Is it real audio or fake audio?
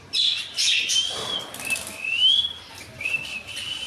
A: real